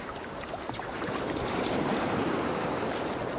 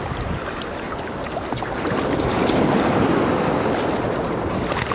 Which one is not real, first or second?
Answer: first